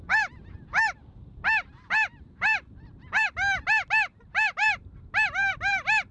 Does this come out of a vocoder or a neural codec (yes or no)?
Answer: yes